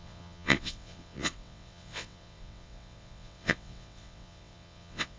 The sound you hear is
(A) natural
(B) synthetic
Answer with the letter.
B